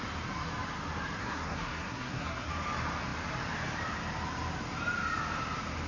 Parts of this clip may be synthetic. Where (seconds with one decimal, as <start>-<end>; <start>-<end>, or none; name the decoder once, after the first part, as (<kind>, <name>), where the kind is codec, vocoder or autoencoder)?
1.2-2.5 (codec, SNAC)